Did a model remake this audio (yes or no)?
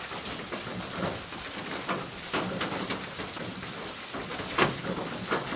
no